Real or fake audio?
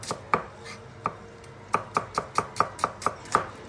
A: real